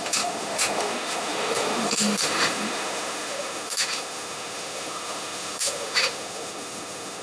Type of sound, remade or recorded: remade